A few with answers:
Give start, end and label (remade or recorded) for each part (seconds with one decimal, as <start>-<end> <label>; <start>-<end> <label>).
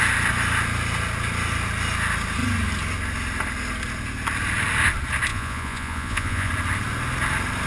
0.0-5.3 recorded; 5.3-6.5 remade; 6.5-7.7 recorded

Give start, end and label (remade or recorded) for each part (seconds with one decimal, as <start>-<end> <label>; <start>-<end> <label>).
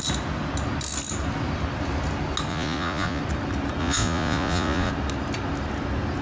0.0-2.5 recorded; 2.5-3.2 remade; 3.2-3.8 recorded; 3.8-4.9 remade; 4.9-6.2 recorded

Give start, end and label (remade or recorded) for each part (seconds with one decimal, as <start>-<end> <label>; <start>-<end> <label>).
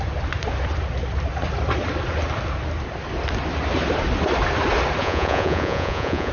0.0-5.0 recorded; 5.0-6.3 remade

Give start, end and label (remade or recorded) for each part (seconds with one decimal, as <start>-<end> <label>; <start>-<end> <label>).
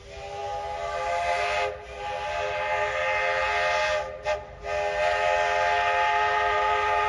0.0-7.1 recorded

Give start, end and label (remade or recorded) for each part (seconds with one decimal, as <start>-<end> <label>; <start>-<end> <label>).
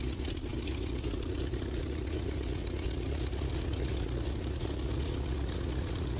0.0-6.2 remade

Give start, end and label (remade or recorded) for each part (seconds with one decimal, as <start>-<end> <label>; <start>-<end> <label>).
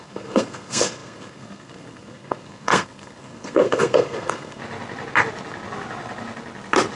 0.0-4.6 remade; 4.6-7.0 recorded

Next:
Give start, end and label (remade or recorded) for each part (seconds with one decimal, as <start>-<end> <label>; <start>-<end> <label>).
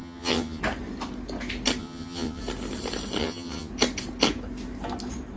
0.0-0.6 remade; 0.6-1.8 recorded; 1.8-2.4 remade; 2.4-3.2 recorded; 3.2-3.7 remade; 3.7-5.4 recorded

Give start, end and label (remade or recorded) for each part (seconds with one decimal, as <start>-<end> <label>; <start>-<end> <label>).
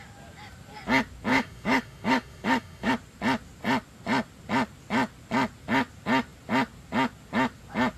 0.0-1.3 recorded; 1.3-2.9 remade; 2.9-8.0 recorded